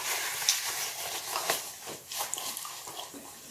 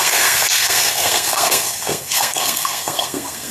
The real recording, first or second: first